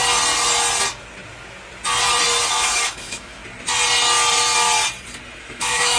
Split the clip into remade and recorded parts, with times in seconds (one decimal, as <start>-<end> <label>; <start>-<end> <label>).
0.0-2.5 recorded; 2.5-3.4 remade; 3.4-5.4 recorded; 5.4-6.0 remade

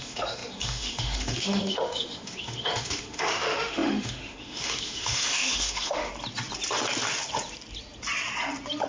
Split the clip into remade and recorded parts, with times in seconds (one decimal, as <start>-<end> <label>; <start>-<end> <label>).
0.0-6.1 remade; 6.1-8.9 recorded

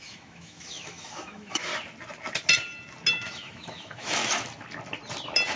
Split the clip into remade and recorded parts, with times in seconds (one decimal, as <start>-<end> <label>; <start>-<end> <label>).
0.0-1.7 remade; 1.7-3.1 recorded; 3.1-4.2 remade; 4.2-5.6 recorded